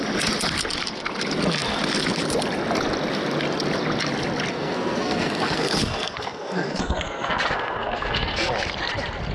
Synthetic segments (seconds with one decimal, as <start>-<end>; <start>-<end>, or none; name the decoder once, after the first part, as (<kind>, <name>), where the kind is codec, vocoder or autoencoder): 4.5-8.5 (codec, SNAC)